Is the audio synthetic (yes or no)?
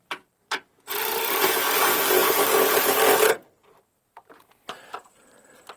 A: yes